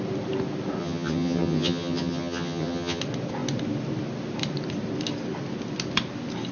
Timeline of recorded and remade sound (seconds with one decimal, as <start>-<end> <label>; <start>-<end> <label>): 0.0-0.8 recorded; 0.8-3.0 remade; 3.0-6.5 recorded